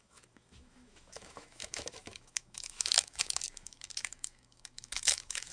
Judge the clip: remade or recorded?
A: remade